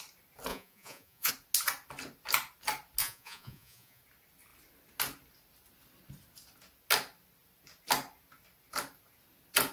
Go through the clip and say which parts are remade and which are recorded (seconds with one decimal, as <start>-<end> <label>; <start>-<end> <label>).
0.0-0.5 recorded; 0.5-1.3 remade; 1.3-3.0 recorded; 3.0-4.0 remade; 4.0-9.7 recorded

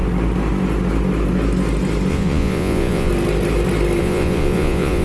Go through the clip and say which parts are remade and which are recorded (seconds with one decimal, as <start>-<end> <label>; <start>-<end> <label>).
0.0-2.1 recorded; 2.1-3.1 remade; 3.1-4.0 recorded; 4.0-5.0 remade

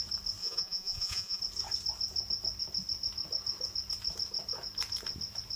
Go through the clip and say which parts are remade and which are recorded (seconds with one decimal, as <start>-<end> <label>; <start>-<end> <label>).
0.0-0.4 recorded; 0.4-1.4 remade; 1.4-5.6 recorded